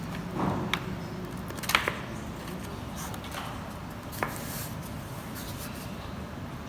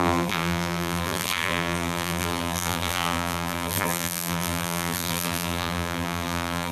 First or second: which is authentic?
first